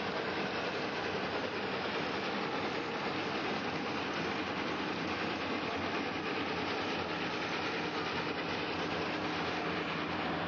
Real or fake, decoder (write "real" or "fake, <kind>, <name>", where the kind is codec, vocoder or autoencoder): real